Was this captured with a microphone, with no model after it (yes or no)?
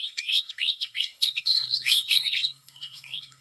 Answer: no